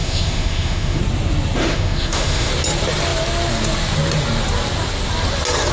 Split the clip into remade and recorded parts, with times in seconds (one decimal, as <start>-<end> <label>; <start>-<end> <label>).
0.0-1.0 remade; 1.0-1.6 recorded; 1.6-2.5 remade; 2.5-5.7 recorded